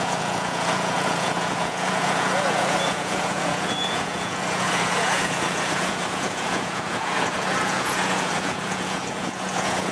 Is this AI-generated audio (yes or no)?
yes